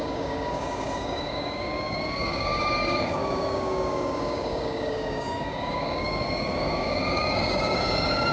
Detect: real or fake fake